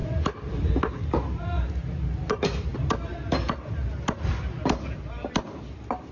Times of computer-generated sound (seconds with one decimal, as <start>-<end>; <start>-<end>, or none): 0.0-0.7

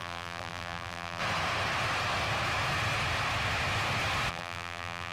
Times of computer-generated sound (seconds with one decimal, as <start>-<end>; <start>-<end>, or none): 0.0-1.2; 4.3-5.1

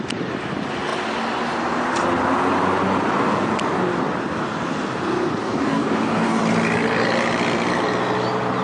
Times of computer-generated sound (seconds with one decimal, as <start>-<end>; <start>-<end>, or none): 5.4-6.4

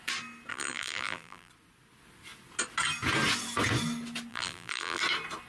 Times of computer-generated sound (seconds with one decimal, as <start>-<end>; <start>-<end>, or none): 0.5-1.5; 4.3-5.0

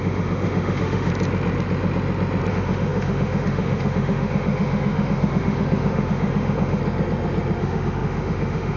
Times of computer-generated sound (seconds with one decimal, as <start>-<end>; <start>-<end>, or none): 0.0-1.1; 2.5-6.8; 7.6-8.8

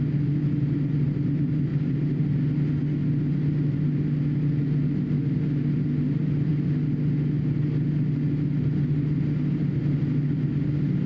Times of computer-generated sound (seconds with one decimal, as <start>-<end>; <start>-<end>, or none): 1.7-2.2

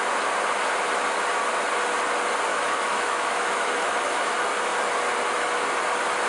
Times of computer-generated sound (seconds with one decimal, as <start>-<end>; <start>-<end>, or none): 2.5-4.3

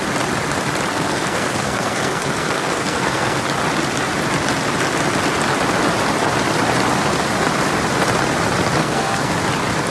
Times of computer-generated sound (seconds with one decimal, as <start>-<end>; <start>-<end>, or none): 0.9-3.4; 8.8-9.3